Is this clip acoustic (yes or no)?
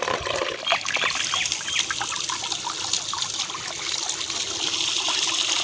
yes